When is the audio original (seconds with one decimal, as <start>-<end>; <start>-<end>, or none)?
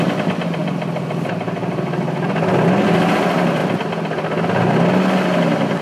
0.0-5.8